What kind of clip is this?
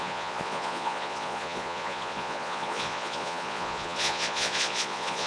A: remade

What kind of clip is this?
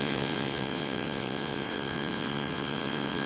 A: remade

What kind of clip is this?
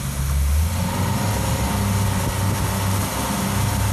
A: recorded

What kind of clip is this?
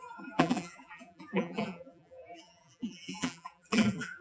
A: remade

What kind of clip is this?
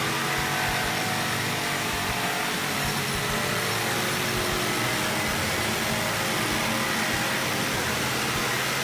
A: recorded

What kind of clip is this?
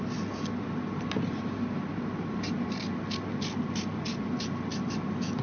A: recorded